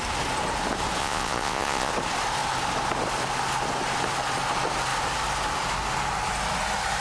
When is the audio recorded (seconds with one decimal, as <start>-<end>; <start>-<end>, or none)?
0.0-1.0; 1.9-7.0